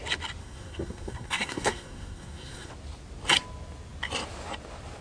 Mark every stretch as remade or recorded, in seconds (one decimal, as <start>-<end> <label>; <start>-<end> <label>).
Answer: 0.0-0.4 recorded; 0.4-2.7 remade; 2.7-5.0 recorded